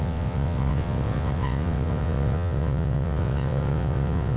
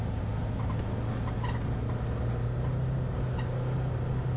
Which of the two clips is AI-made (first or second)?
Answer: first